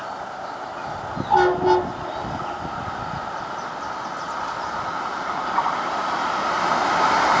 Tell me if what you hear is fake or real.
real